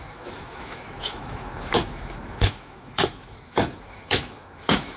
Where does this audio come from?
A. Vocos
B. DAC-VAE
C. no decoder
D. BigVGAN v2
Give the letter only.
B